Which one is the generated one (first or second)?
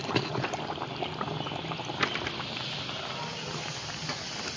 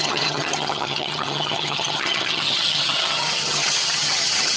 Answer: second